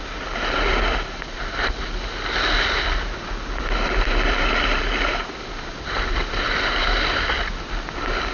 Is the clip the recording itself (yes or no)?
yes